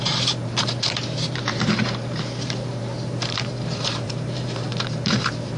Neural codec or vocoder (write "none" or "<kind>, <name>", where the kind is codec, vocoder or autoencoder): vocoder, BigVGAN v2